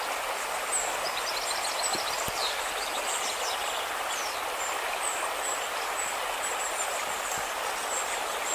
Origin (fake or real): real